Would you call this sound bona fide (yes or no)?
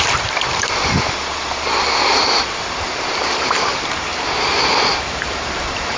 no